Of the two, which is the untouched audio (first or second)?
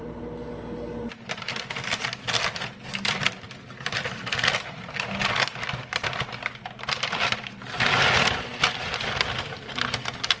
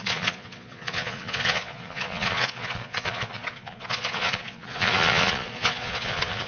first